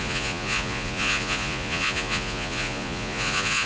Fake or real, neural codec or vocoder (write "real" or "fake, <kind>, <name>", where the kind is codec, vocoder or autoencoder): fake, vocoder, Vocos